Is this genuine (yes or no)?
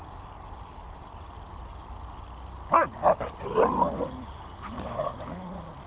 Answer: yes